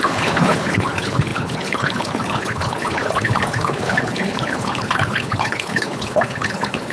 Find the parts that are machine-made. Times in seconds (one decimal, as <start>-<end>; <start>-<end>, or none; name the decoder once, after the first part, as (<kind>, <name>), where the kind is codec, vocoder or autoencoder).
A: 0.0-6.9 (codec, HILCodec)